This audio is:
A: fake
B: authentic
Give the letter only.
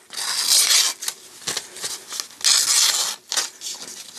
B